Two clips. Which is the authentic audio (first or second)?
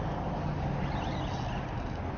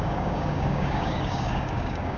first